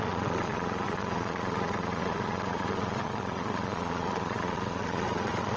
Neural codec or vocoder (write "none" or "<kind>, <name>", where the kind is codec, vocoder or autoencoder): vocoder, Vocos